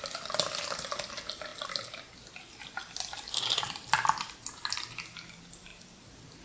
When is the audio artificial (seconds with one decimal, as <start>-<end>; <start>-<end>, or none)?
none